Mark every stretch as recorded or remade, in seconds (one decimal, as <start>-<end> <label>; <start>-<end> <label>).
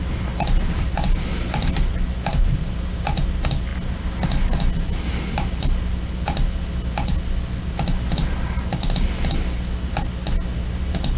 0.0-2.3 recorded; 2.3-3.2 remade; 3.2-11.2 recorded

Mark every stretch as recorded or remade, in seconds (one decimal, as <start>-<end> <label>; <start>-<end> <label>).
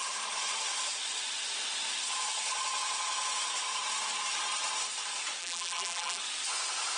0.0-5.4 recorded; 5.4-6.2 remade; 6.2-7.0 recorded